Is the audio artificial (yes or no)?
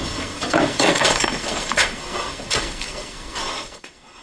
yes